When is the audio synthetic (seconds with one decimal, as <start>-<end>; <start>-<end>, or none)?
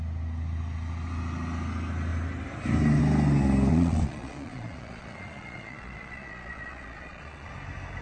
3.7-7.5